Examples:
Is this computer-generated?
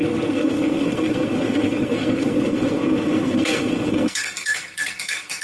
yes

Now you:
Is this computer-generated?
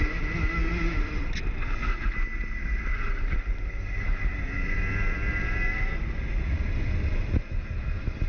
no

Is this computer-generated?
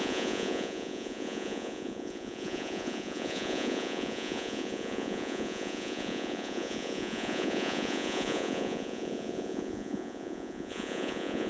yes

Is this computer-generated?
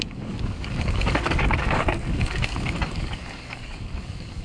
yes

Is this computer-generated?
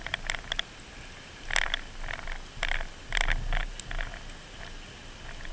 no